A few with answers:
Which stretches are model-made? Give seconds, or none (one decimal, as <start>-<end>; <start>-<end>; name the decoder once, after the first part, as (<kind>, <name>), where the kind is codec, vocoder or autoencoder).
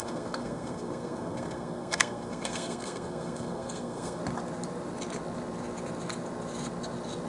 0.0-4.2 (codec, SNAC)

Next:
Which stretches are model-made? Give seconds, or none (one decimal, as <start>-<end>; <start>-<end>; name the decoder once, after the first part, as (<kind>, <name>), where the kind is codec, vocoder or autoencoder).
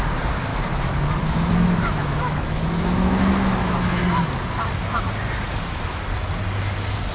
0.5-4.0 (autoencoder, DAC-VAE)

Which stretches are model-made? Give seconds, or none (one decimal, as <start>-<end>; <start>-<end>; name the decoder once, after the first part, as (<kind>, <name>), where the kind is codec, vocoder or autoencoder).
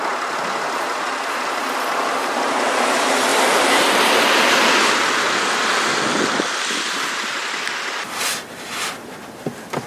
none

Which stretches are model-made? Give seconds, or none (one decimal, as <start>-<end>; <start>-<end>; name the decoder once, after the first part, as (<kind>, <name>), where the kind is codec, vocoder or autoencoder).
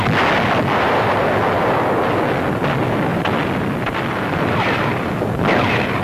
3.1-4.8 (vocoder, BigVGAN v2)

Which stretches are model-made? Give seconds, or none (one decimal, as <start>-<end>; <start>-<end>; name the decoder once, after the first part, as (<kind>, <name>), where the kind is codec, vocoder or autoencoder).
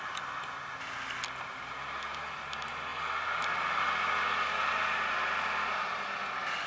none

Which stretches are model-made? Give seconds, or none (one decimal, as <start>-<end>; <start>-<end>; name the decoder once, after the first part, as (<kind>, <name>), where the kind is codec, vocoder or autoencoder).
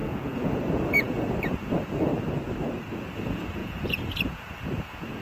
0.0-2.1 (vocoder, Vocos); 3.1-5.2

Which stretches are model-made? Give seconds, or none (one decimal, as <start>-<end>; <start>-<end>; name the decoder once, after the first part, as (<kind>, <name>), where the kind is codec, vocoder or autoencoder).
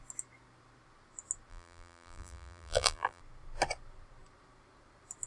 1.5-3.2 (vocoder, BigVGAN v2)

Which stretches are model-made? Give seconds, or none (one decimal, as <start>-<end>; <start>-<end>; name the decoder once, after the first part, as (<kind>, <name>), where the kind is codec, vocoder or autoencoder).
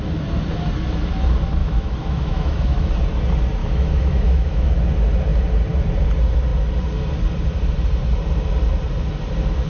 1.6-2.9 (autoencoder, DAC-VAE); 3.6-4.7